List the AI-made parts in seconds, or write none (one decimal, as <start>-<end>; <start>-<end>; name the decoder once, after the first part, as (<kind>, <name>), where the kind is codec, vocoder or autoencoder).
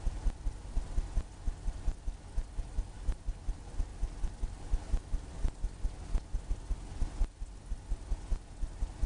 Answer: none